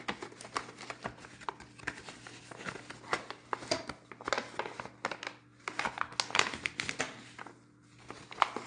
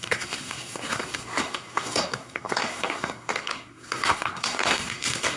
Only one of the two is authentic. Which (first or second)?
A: first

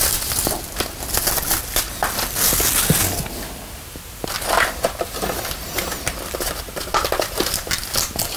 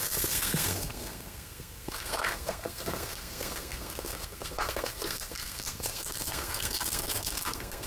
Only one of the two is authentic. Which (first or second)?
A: first